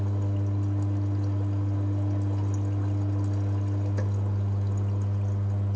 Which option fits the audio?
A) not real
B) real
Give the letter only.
B